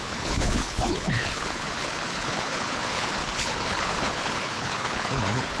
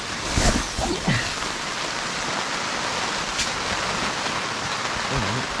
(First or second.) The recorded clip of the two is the second